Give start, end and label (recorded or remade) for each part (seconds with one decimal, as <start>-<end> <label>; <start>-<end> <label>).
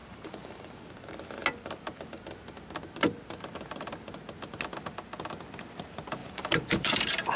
0.0-0.8 remade; 0.8-6.2 recorded; 6.2-6.9 remade; 6.9-7.4 recorded